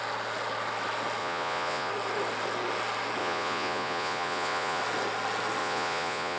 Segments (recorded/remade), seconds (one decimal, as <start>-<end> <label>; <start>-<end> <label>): 0.0-1.2 recorded; 1.2-1.9 remade; 1.9-3.2 recorded; 3.2-4.8 remade; 4.8-5.6 recorded; 5.6-6.4 remade